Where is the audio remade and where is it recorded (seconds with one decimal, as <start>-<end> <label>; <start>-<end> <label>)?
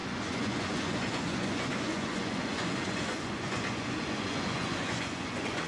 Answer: 0.0-5.7 remade